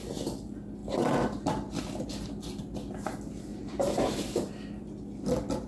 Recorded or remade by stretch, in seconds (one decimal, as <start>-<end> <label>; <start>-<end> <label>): 0.0-0.8 recorded; 0.8-1.4 remade; 1.4-3.5 recorded; 3.5-4.5 remade; 4.5-5.7 recorded